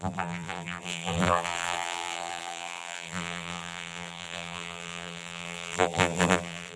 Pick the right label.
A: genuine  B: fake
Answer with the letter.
B